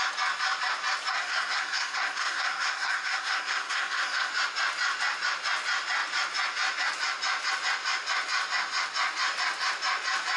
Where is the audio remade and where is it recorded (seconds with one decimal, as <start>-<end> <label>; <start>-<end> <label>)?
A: 0.0-1.1 recorded; 1.1-4.3 remade; 4.3-10.4 recorded